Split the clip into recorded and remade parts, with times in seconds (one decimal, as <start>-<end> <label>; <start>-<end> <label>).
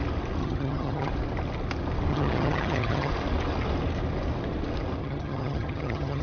0.0-0.4 recorded; 0.4-1.1 remade; 1.1-2.1 recorded; 2.1-3.1 remade; 3.1-5.0 recorded; 5.0-6.2 remade